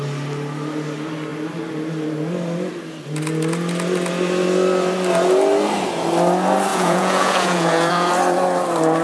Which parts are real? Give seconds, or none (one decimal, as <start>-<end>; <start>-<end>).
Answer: 0.0-6.7; 8.1-9.0